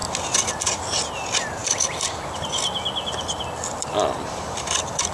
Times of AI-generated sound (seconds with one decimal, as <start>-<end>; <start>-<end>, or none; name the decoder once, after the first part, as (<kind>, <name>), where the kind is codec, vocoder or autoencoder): none